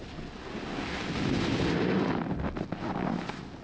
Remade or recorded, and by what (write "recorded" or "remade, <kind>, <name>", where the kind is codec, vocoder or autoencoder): recorded